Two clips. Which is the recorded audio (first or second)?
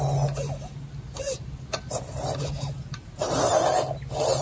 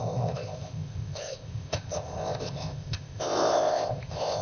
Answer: first